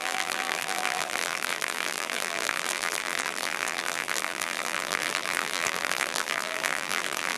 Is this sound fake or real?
fake